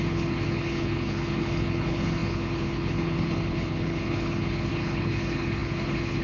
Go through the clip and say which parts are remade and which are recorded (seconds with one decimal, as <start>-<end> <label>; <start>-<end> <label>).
0.0-6.2 remade